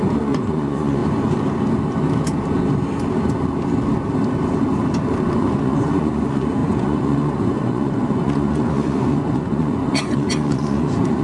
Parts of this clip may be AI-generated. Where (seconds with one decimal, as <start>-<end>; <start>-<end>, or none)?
0.0-1.0; 5.4-11.2